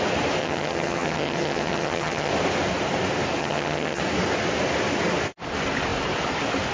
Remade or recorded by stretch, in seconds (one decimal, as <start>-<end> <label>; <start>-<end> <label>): 0.0-0.4 recorded; 0.4-2.3 remade; 2.3-3.4 recorded; 3.4-4.0 remade; 4.0-6.7 recorded